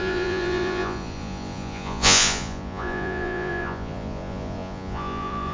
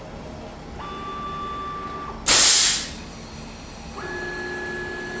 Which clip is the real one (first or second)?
second